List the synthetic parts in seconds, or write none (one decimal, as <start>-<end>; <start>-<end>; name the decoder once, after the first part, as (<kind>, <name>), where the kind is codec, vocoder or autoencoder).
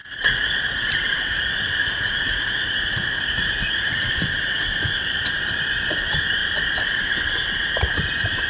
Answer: 0.0-1.4 (vocoder, Vocos); 1.8-4.1